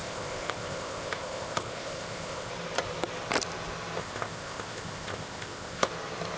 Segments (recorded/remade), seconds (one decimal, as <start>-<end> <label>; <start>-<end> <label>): 0.0-2.5 remade; 2.5-4.0 recorded; 4.0-5.9 remade; 5.9-6.4 recorded